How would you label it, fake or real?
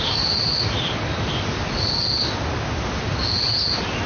real